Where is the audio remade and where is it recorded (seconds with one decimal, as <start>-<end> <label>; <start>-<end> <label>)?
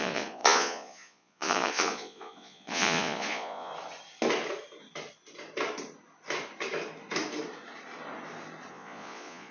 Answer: 0.0-3.7 remade; 3.7-8.7 recorded; 8.7-9.5 remade